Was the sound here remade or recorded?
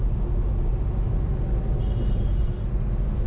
recorded